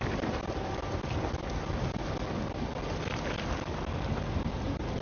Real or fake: real